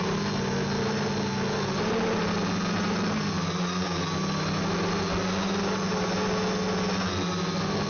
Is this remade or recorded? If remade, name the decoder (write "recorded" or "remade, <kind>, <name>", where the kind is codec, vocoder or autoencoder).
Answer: recorded